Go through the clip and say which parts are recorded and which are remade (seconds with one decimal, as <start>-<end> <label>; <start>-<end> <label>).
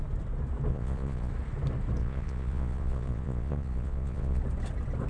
0.0-0.7 recorded; 0.7-1.3 remade; 1.3-2.0 recorded; 2.0-4.4 remade; 4.4-5.1 recorded